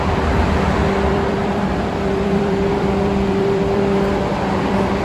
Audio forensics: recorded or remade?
remade